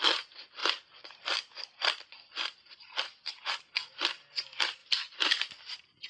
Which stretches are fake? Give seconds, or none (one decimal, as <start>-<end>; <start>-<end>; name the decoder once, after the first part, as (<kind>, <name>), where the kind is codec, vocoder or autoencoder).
0.6-3.4 (vocoder, BigVGAN v2); 4.8-5.5